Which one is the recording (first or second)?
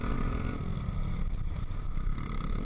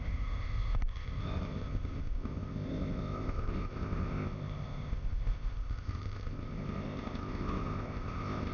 first